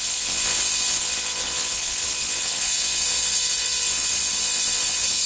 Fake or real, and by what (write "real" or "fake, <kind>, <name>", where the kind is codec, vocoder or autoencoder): fake, vocoder, WaveNeXt